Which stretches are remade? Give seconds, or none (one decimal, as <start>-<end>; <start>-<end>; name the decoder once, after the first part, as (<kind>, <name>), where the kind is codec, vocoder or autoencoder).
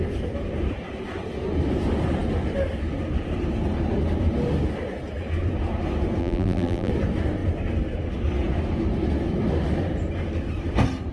6.2-6.9 (vocoder, BigVGAN v2)